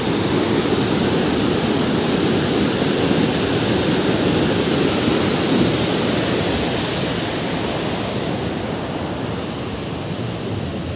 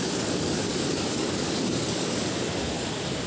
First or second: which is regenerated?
second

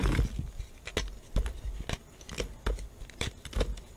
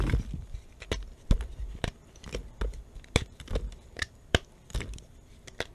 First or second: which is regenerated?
second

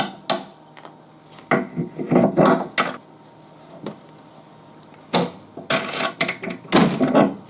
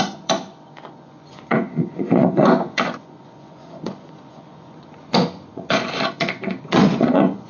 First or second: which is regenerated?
second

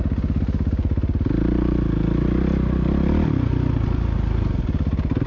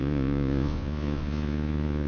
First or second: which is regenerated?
second